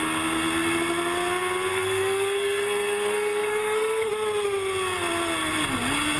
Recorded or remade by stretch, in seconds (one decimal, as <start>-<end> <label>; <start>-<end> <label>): 0.0-1.7 recorded; 1.7-4.1 remade; 4.1-6.2 recorded